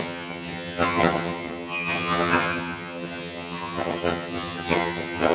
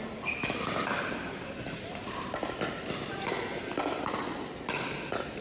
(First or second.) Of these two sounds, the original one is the second